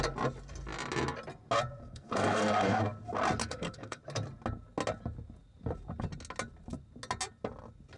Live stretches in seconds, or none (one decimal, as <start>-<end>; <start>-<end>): 0.0-1.8; 2.8-3.4; 4.0-8.0